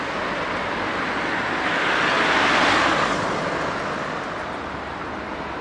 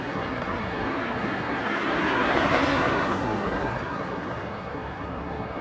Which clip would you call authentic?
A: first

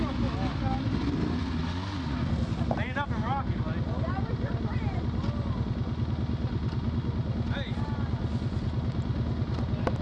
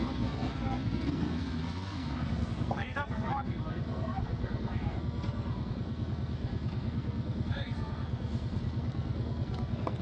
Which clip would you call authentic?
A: first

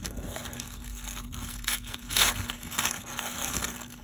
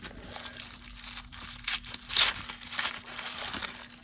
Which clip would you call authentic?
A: second